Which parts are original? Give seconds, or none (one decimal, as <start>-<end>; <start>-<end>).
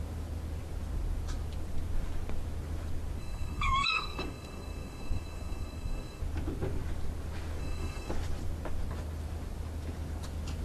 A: 0.0-3.2; 6.2-7.6; 8.1-10.6